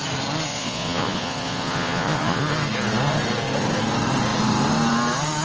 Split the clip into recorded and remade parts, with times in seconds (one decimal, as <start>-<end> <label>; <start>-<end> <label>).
0.0-0.5 recorded; 0.5-2.4 remade; 2.4-5.4 recorded